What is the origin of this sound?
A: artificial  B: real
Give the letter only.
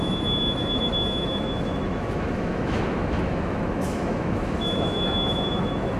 A